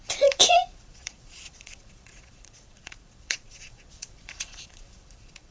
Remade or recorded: remade